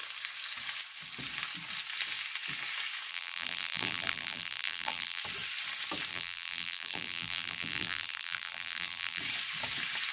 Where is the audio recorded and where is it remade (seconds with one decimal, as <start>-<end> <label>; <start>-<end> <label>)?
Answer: 0.0-3.1 recorded; 3.1-5.2 remade; 5.2-6.1 recorded; 6.1-9.2 remade; 9.2-10.1 recorded